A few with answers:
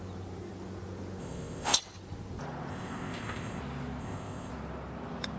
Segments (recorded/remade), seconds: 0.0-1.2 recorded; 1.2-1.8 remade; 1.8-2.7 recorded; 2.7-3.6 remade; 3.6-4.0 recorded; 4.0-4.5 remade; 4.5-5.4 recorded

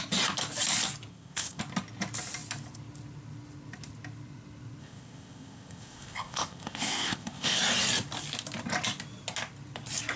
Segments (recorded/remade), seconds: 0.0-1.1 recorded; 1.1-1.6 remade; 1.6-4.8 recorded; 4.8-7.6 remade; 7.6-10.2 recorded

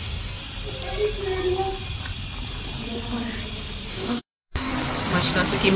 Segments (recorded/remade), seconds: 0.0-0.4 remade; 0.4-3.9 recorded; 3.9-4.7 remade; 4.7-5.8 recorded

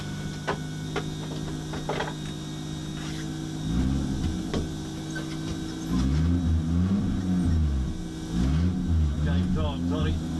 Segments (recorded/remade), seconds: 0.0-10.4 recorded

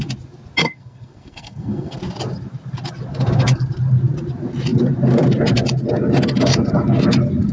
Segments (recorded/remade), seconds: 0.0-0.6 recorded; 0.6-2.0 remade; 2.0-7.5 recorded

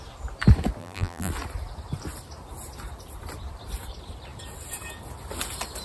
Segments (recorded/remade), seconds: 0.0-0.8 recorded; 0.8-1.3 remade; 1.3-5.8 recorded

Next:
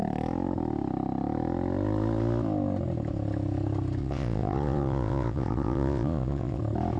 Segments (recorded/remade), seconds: 0.0-4.0 recorded; 4.0-6.6 remade; 6.6-7.0 recorded